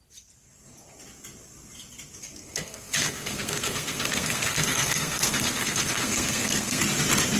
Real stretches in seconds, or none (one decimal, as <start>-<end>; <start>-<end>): 0.0-2.4; 6.8-7.4